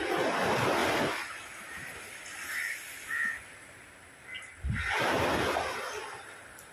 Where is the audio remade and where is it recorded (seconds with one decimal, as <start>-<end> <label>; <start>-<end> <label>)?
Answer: 0.0-6.7 recorded